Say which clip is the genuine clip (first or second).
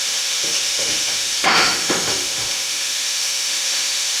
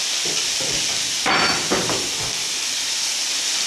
second